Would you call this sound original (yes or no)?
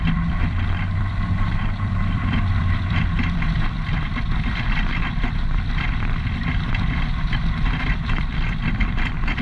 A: no